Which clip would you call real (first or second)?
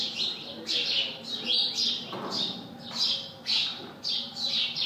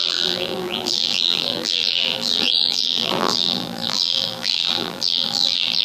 first